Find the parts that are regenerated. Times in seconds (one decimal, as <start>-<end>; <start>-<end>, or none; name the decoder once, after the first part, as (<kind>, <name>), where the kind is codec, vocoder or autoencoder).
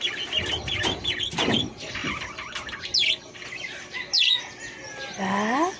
none